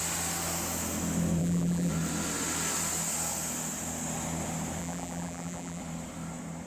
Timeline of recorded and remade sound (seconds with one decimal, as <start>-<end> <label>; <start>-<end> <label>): 0.0-1.4 recorded; 1.4-1.9 remade; 1.9-4.8 recorded; 4.8-5.8 remade; 5.8-6.7 recorded

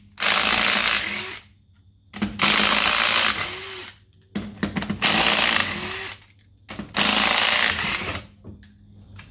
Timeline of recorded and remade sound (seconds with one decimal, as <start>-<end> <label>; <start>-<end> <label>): 0.0-9.3 recorded

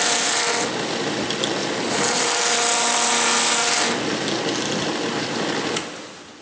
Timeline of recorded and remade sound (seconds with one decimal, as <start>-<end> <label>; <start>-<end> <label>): 0.0-1.6 recorded; 1.6-2.4 remade; 2.4-6.4 recorded

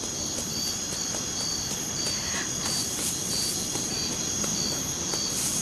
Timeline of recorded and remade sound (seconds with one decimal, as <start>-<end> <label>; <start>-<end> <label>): 0.0-5.6 recorded

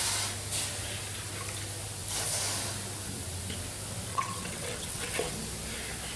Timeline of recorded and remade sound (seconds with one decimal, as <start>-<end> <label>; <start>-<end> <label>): 0.0-4.1 recorded; 4.1-5.3 remade; 5.3-6.2 recorded

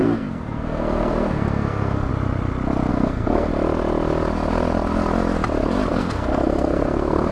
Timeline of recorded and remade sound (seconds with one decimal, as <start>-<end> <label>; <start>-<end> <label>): 0.0-2.1 remade; 2.1-2.9 recorded; 2.9-3.5 remade; 3.5-5.9 recorded; 5.9-7.3 remade